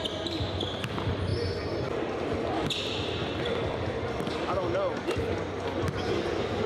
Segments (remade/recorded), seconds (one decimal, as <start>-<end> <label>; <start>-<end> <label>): 0.0-6.7 recorded